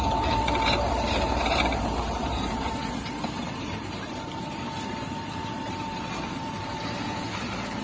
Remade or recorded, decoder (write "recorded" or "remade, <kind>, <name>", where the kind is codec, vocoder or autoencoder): remade, vocoder, BigVGAN v2